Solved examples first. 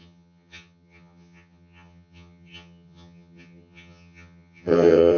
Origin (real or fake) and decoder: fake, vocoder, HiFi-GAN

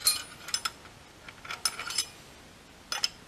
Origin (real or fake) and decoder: real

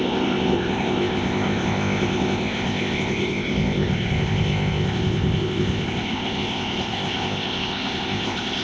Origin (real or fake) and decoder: fake, codec, ZipCodec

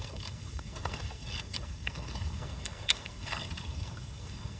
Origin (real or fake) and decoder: fake, codec, SNAC